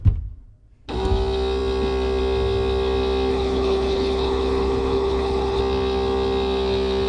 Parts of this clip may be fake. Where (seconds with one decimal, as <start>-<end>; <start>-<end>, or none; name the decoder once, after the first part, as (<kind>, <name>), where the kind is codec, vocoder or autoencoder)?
3.3-5.6 (codec, HILCodec)